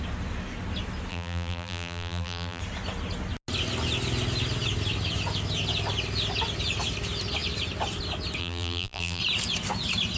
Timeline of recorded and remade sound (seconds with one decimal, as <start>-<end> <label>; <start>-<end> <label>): 0.0-1.1 recorded; 1.1-2.6 remade; 2.6-8.4 recorded; 8.4-9.2 remade; 9.2-10.2 recorded